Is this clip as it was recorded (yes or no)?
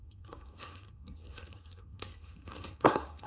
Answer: no